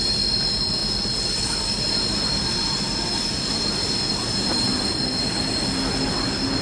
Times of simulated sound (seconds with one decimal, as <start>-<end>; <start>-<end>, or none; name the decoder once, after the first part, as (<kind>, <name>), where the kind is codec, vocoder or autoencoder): none

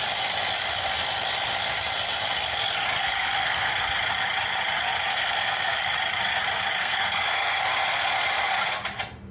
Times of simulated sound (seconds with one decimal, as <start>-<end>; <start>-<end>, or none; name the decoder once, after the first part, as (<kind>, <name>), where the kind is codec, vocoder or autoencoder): 3.0-3.7 (codec, SNAC); 5.1-5.9; 6.8-7.6

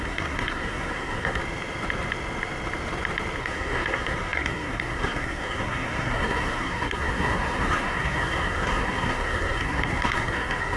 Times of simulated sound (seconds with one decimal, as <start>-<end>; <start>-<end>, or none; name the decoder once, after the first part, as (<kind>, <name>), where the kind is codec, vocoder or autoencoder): 0.0-1.4 (codec, SNAC); 3.4-10.8

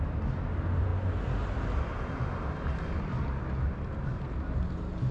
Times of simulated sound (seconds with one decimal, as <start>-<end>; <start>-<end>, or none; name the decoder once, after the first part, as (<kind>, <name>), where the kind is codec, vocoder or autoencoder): none

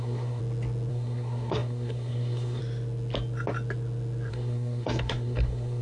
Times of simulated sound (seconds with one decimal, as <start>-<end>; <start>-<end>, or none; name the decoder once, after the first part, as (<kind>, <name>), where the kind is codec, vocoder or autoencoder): 0.0-0.4 (codec, SNAC); 0.9-2.6; 4.3-5.8

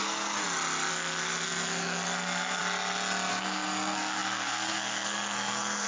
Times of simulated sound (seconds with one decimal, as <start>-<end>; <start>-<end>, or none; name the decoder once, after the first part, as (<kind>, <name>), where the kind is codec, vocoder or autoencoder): 0.0-0.4 (codec, SNAC); 0.9-2.6; 3.3-5.9

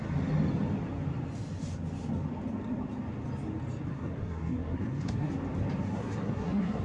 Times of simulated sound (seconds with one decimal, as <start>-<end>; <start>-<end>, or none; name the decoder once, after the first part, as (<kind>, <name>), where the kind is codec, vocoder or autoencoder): 3.9-5.3 (codec, SNAC); 5.9-6.8

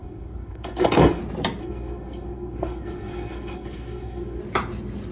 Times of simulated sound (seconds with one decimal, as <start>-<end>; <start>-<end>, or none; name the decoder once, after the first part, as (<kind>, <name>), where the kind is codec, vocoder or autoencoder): 0.0-1.2 (codec, SNAC); 1.6-4.4